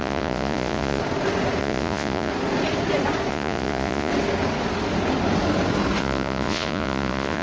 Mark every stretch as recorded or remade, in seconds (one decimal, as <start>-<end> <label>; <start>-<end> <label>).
0.0-1.0 remade; 1.0-1.6 recorded; 1.6-2.3 remade; 2.3-3.3 recorded; 3.3-4.1 remade; 4.1-6.0 recorded; 6.0-7.4 remade